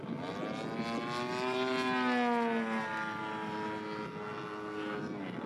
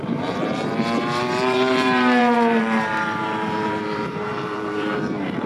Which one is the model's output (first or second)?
second